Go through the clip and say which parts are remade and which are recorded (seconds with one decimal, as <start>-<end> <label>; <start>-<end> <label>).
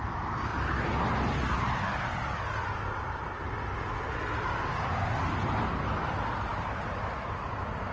0.0-7.9 recorded